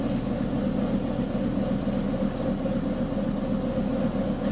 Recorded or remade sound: recorded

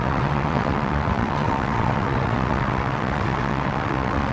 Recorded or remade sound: remade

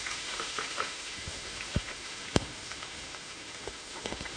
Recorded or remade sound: remade